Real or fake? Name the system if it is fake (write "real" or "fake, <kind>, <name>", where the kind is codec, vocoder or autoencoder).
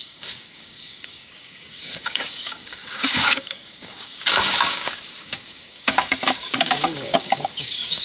fake, codec, DAC